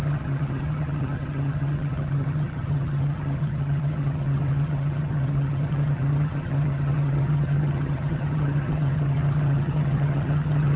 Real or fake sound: fake